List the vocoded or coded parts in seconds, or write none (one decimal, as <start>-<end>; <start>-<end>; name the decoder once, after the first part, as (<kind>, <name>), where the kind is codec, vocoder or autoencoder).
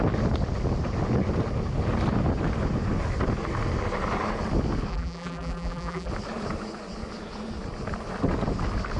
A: 4.9-6.1 (vocoder, BigVGAN v2)